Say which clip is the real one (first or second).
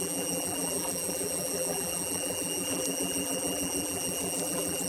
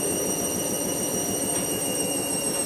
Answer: second